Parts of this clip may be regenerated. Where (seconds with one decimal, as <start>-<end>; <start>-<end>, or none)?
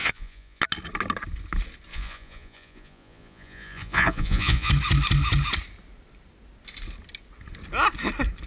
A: 0.0-0.6; 1.9-4.7